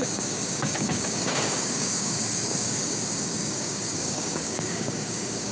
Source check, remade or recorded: remade